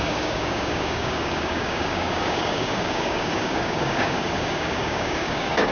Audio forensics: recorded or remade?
remade